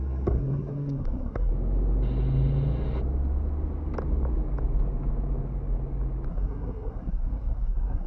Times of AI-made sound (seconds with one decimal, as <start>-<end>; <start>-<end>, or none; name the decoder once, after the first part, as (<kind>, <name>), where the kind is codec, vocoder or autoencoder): 0.0-1.5 (codec, SNAC); 6.3-8.1